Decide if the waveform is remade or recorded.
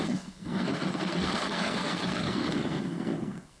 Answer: remade